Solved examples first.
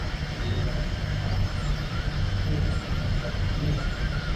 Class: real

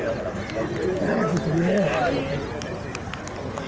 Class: real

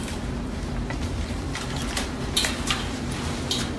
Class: fake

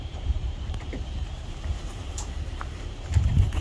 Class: fake